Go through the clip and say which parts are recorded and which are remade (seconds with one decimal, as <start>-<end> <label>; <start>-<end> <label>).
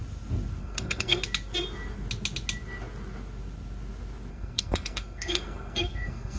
0.0-0.6 recorded; 0.6-1.2 remade; 1.2-4.3 recorded; 4.3-6.4 remade